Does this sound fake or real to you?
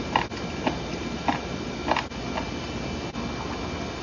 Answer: real